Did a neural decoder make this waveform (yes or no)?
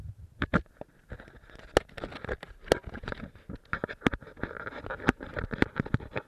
no